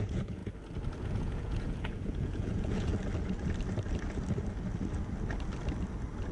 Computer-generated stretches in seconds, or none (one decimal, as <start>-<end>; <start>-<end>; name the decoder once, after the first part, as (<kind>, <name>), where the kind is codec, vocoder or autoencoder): 0.0-0.4 (vocoder, Vocos); 1.0-2.9